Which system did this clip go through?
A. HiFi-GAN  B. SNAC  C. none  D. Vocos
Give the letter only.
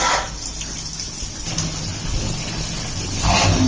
C